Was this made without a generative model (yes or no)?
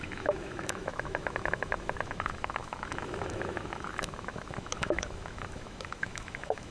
no